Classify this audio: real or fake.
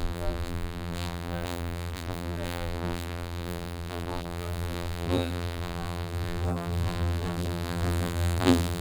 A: fake